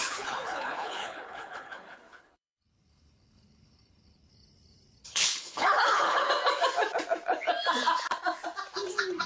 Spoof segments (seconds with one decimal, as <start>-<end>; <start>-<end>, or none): 0.0-4.3; 5.0-6.3

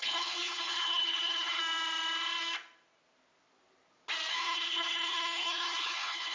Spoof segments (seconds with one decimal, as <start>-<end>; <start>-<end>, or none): 0.0-1.6; 4.3-6.3

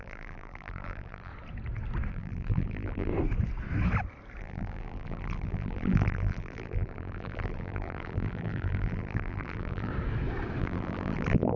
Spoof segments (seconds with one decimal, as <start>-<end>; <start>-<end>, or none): 0.0-1.3; 2.1-3.1; 4.4-9.9; 10.6-11.6

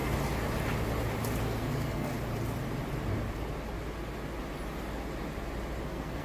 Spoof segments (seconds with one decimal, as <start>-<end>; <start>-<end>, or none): 1.4-2.1; 5.8-6.2

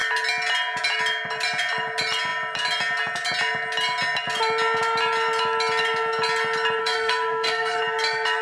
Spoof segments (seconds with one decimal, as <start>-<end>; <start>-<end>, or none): 6.8-7.8

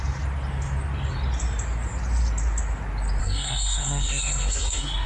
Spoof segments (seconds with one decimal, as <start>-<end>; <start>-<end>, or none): 3.2-5.1

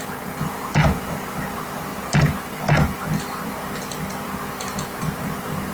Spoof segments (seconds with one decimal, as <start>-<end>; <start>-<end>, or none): 0.0-1.9; 3.2-5.7

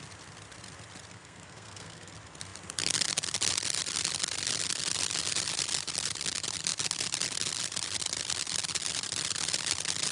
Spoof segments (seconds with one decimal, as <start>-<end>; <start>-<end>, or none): 1.1-2.1